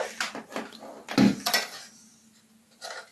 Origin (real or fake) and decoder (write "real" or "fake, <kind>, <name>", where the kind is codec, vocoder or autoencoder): real